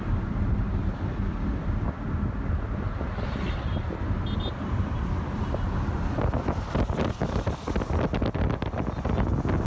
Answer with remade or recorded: recorded